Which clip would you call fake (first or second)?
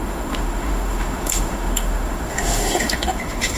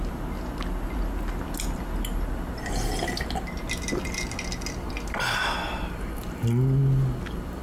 first